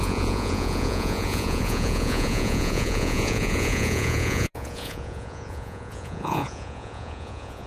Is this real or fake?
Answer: fake